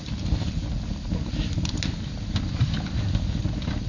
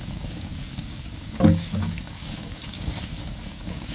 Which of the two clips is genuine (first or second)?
first